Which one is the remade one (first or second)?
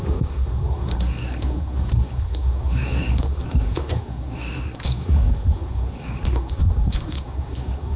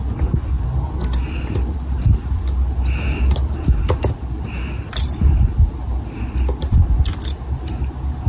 first